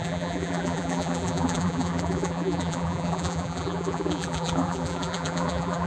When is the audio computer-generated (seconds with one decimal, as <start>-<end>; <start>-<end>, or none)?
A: 0.0-5.9